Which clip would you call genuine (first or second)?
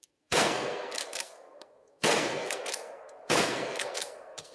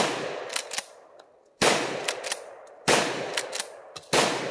second